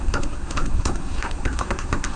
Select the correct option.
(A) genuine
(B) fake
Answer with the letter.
B